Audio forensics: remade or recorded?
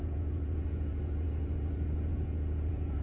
remade